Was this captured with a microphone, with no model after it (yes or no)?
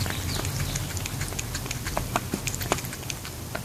yes